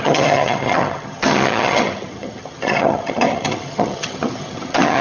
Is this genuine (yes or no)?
no